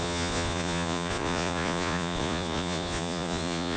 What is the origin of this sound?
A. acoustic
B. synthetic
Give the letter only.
B